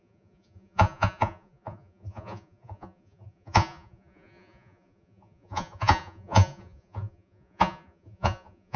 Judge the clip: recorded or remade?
remade